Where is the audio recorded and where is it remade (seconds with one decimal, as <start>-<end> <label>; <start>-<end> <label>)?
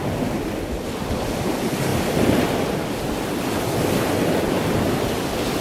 0.0-5.6 recorded